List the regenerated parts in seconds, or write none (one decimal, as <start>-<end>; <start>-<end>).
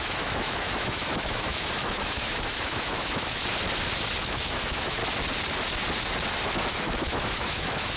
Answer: 0.0-3.4; 4.2-5.0; 6.7-8.0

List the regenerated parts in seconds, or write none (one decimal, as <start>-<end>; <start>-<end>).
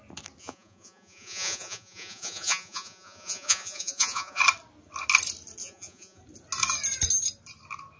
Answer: 0.4-4.4; 5.6-6.2